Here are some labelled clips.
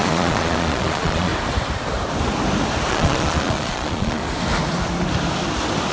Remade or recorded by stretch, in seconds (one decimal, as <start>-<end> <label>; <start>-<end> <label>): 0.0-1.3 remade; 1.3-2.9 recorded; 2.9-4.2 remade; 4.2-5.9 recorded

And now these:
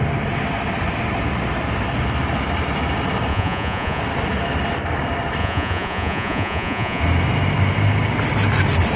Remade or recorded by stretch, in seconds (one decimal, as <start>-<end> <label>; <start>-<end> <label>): 0.0-3.3 recorded; 3.3-4.0 remade; 4.0-5.4 recorded; 5.4-7.0 remade; 7.0-9.0 recorded

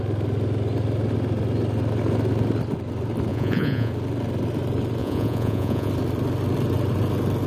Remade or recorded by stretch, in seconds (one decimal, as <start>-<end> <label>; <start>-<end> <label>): 0.0-3.3 recorded; 3.3-3.9 remade; 3.9-5.0 recorded; 5.0-5.9 remade; 5.9-7.5 recorded

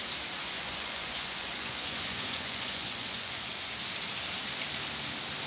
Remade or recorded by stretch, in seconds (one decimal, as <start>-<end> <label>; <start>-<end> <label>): 0.0-0.4 recorded; 0.4-3.7 remade; 3.7-5.5 recorded